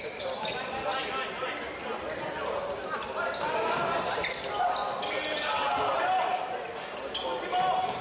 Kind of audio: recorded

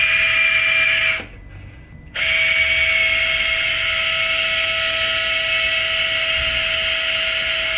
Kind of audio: recorded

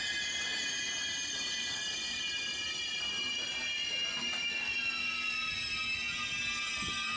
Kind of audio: recorded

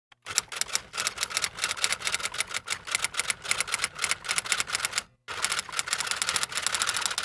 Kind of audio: recorded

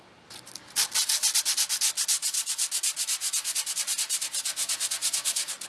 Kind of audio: recorded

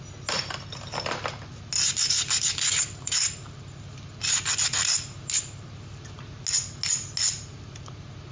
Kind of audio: recorded